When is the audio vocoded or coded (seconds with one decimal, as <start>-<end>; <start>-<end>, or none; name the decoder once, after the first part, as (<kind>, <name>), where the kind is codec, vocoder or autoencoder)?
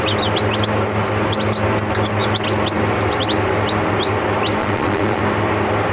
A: 4.6-5.2 (vocoder, Vocos)